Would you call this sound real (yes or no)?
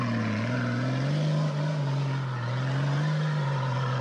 yes